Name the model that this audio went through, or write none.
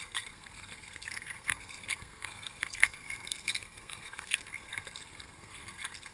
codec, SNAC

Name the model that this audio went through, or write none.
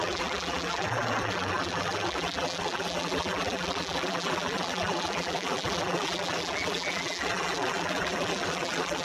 vocoder, BigVGAN v2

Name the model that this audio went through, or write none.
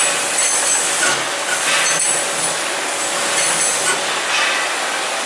none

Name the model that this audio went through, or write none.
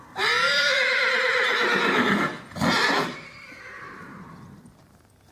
none